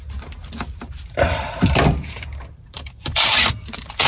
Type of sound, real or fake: fake